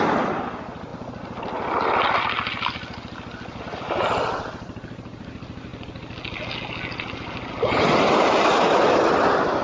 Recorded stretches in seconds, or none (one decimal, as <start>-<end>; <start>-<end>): 0.9-3.6; 5.7-8.4